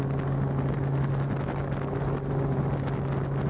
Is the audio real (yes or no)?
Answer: yes